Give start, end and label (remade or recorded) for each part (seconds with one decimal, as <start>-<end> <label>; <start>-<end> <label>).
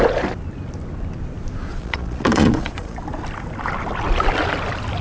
0.0-1.7 recorded; 1.7-3.0 remade; 3.0-5.0 recorded